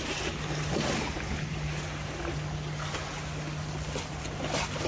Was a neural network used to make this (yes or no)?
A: no